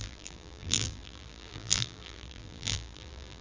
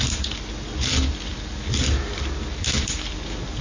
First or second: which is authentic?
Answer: second